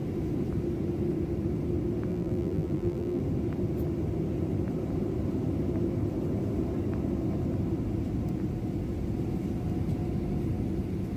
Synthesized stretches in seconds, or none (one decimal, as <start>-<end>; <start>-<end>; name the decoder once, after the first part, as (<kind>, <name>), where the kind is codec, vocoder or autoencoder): 2.1-3.2 (vocoder, BigVGAN v2)